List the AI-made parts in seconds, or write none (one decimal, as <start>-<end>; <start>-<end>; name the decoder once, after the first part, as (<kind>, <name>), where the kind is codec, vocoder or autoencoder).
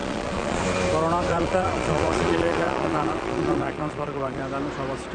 0.0-0.6 (vocoder, Vocos); 1.3-4.4